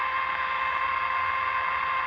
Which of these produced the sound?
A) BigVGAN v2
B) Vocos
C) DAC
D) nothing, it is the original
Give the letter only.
D